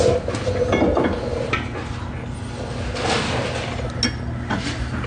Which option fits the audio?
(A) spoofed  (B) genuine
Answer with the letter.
B